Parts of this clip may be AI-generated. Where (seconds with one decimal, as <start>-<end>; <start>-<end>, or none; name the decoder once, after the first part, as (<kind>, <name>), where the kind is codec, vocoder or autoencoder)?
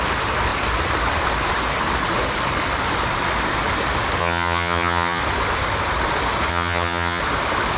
4.2-5.2 (vocoder, HiFi-GAN); 6.5-7.2